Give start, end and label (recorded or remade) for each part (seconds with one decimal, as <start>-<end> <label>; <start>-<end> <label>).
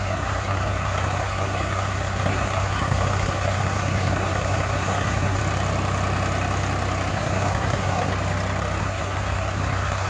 0.0-5.4 remade; 5.4-7.1 recorded; 7.1-8.1 remade; 8.1-8.8 recorded; 8.8-10.1 remade